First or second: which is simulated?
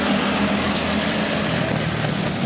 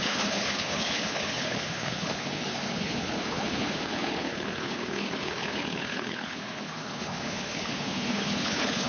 second